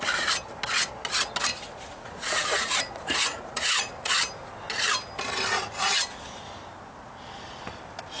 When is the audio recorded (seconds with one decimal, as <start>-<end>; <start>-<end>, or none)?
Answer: 0.0-1.5; 4.2-8.2